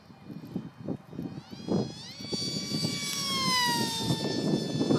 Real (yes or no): yes